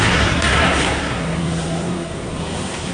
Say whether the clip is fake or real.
fake